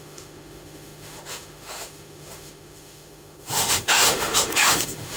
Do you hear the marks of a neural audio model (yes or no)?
yes